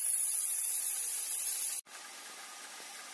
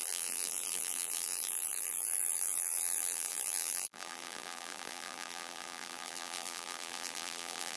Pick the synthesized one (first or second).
second